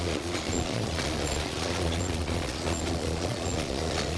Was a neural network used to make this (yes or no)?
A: yes